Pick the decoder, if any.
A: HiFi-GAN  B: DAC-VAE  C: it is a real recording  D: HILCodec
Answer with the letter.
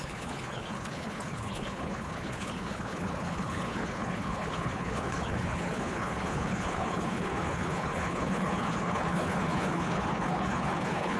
D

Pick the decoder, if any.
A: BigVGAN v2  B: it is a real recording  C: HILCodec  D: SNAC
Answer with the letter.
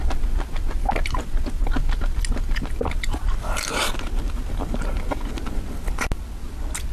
B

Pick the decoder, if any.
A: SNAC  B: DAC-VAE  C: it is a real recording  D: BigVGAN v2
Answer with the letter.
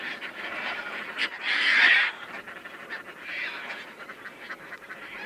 D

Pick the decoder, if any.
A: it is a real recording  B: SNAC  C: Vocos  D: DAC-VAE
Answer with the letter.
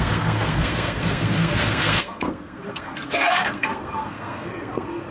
B